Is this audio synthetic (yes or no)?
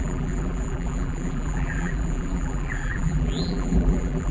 yes